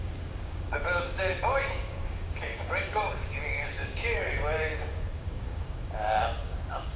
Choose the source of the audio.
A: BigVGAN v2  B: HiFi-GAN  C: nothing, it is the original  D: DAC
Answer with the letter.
D